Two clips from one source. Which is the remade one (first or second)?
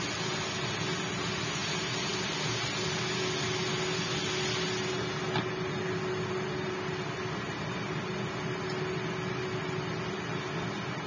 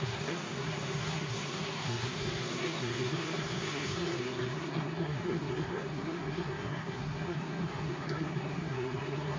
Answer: second